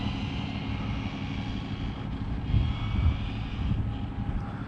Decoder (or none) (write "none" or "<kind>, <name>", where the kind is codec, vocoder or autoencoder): none